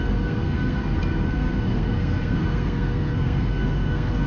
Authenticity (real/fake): fake